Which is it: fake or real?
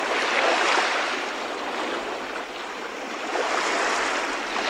real